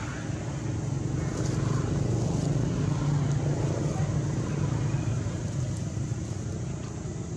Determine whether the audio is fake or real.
real